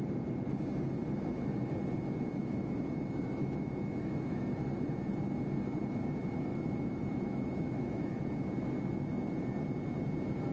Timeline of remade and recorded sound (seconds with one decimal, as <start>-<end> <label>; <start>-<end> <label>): 0.0-2.4 recorded; 2.4-4.4 remade; 4.4-6.5 recorded; 6.5-8.2 remade; 8.2-10.5 recorded